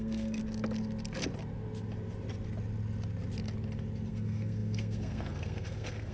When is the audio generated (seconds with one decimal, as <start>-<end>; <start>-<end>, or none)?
0.0-0.4; 4.1-6.1